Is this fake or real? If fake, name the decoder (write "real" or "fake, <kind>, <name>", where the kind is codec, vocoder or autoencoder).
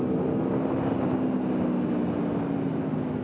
real